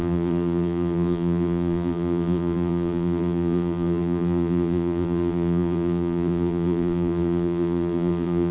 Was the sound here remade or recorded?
remade